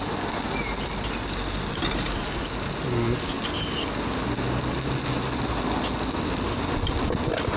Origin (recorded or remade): recorded